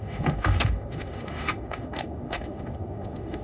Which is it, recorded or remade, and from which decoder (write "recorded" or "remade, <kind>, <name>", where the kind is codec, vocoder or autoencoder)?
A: remade, autoencoder, DAC-VAE